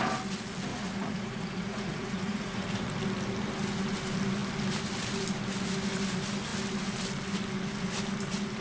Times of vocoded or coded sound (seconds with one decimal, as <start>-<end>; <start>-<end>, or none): 0.7-2.9